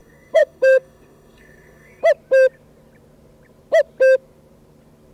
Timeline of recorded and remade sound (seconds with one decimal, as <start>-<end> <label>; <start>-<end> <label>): 0.0-2.0 remade; 2.0-5.1 recorded